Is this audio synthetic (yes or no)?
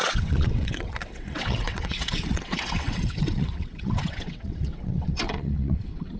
yes